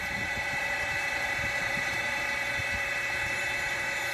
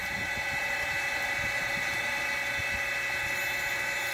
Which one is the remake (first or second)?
first